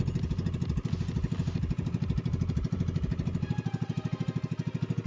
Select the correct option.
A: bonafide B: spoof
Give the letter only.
A